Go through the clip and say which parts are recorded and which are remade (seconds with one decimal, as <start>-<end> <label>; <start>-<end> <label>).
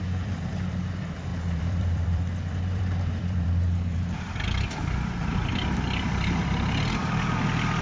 0.0-7.8 remade